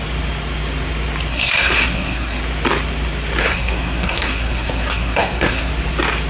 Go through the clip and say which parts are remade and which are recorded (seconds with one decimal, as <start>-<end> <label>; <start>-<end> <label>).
0.0-1.3 recorded; 1.3-2.4 remade; 2.4-3.4 recorded; 3.4-5.7 remade; 5.7-6.3 recorded